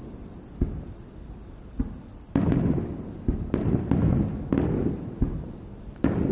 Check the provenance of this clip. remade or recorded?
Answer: recorded